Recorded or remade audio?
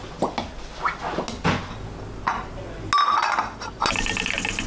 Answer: recorded